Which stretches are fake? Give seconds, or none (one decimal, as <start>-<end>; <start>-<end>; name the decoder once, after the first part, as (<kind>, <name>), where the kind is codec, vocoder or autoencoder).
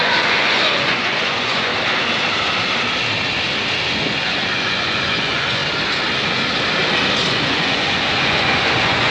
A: 0.0-1.7 (vocoder, Vocos); 3.9-5.6; 7.3-9.1